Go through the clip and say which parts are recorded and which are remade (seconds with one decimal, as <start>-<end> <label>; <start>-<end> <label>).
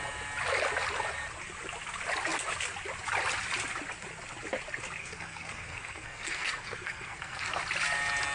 0.0-5.0 recorded; 5.0-7.6 remade; 7.6-8.3 recorded